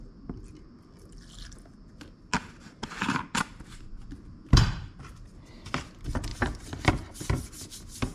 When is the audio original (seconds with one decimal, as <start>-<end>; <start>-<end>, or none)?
0.0-8.1